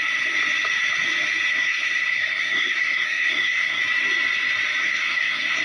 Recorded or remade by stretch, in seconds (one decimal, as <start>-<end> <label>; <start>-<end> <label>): 0.0-1.5 recorded; 1.5-3.8 remade; 3.8-4.8 recorded; 4.8-5.6 remade